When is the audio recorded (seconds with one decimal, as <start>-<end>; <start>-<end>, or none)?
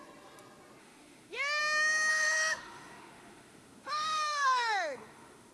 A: 0.0-0.8; 1.6-2.1